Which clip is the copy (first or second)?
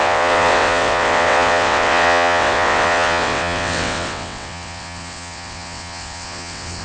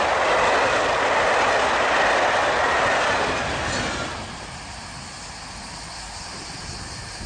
first